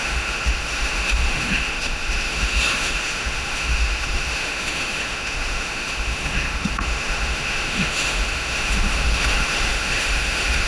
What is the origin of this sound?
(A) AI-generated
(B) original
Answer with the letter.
A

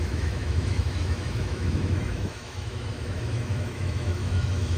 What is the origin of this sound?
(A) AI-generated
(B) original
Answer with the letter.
A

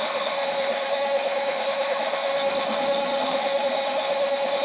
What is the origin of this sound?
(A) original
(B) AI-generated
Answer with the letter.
B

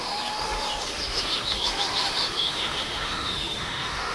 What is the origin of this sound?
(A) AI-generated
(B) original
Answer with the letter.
A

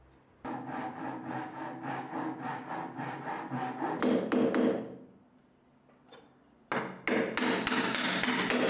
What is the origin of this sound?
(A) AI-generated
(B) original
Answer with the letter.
B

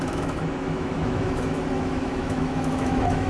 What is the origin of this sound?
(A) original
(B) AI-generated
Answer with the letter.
B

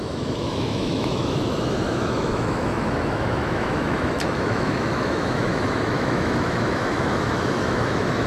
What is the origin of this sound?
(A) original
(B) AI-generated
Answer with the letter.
B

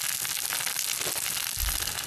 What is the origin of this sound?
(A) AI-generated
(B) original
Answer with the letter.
B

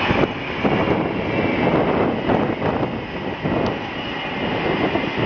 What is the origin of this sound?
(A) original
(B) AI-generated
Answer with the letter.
A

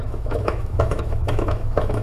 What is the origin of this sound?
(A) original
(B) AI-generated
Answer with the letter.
B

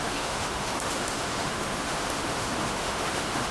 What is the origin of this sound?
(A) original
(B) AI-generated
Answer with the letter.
B